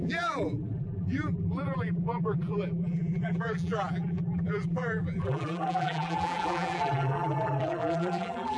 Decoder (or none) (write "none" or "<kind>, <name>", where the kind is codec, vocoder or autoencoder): vocoder, BigVGAN v2